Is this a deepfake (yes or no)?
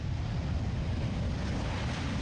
no